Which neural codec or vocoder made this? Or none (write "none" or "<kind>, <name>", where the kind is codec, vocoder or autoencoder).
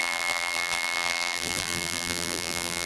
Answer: vocoder, BigVGAN v2